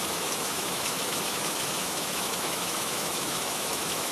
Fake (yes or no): yes